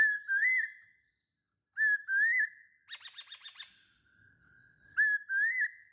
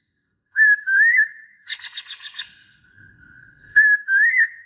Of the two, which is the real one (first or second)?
first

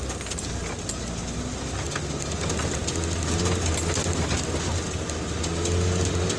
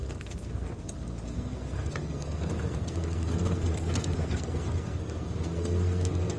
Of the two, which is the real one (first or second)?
first